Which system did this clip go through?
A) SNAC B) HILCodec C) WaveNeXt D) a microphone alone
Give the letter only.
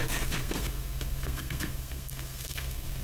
A